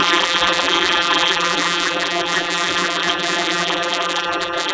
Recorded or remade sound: remade